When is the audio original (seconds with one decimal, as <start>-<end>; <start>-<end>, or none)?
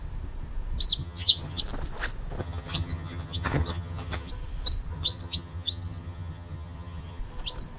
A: 0.0-1.0; 1.6-2.4; 4.3-4.9; 7.2-7.8